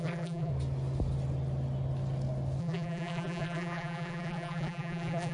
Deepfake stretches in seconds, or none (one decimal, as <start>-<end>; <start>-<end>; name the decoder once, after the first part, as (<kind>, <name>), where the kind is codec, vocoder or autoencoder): 0.0-0.5 (vocoder, BigVGAN v2); 2.6-5.3